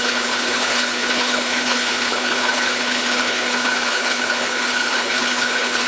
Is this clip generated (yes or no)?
yes